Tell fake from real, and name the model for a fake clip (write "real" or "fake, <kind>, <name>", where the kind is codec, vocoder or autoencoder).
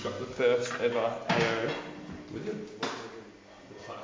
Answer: real